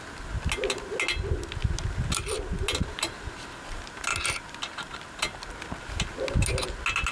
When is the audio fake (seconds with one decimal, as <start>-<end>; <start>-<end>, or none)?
none